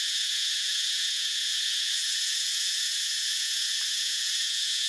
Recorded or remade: remade